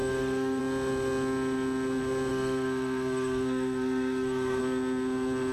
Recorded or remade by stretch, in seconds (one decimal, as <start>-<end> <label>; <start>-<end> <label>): 0.0-0.6 remade; 0.6-2.3 recorded; 2.3-4.6 remade; 4.6-5.5 recorded